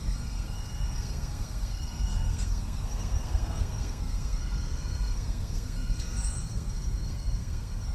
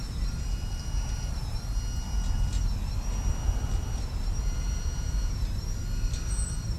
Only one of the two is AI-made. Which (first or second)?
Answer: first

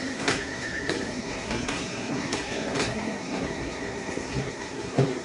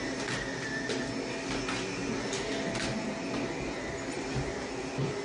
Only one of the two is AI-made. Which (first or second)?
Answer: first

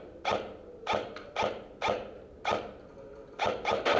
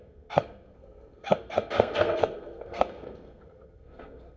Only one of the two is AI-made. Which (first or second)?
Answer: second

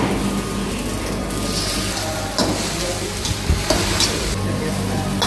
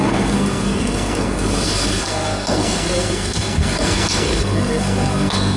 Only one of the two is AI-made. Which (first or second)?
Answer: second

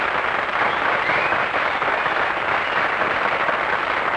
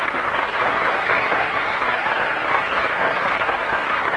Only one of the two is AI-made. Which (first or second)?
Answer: second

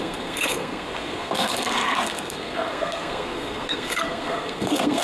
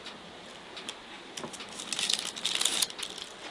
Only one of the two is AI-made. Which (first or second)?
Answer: first